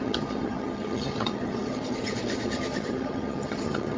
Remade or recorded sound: remade